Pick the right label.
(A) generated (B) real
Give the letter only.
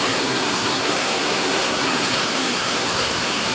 A